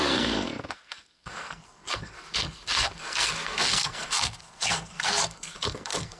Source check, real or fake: fake